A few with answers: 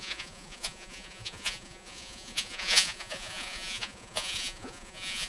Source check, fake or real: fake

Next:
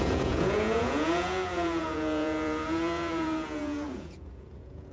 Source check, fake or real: fake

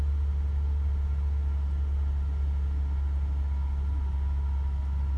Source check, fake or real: real